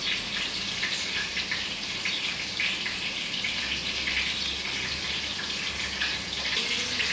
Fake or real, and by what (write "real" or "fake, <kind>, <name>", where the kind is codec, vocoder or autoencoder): real